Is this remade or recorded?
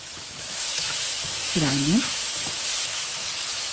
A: remade